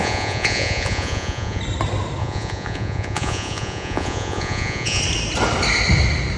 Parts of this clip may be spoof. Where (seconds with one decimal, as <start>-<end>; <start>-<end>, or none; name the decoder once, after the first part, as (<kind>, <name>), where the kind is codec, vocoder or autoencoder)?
0.0-1.6 (vocoder, Vocos); 2.2-5.0